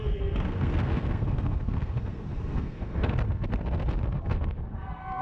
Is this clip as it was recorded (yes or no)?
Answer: no